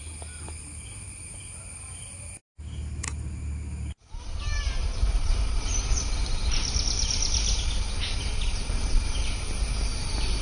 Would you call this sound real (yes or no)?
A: yes